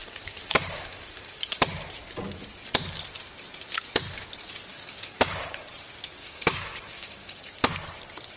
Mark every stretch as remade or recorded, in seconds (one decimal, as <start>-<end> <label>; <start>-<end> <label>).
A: 0.0-1.6 remade; 1.6-4.7 recorded; 4.7-5.7 remade; 5.7-6.2 recorded; 6.2-7.5 remade; 7.5-8.4 recorded